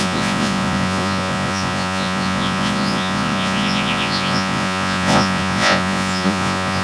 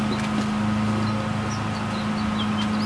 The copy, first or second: first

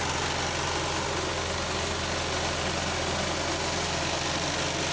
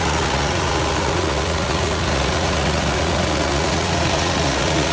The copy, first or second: second